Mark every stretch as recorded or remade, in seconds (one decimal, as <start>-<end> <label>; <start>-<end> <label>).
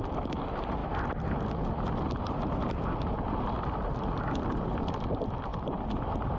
0.0-0.8 remade; 0.8-4.4 recorded; 4.4-5.5 remade; 5.5-6.4 recorded